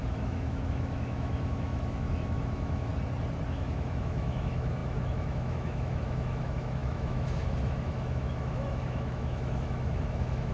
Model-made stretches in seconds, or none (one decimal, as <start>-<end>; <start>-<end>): 0.0-2.9; 3.5-10.5